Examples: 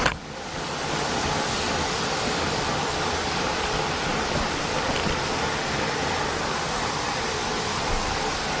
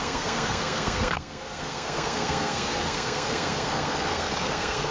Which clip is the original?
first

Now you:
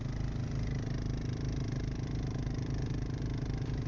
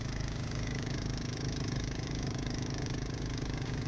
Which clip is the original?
first